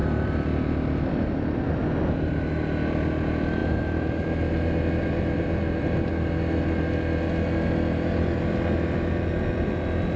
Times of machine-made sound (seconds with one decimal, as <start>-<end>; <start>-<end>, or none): 0.0-1.8